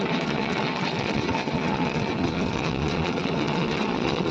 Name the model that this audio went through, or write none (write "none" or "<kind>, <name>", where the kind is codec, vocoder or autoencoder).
vocoder, Vocos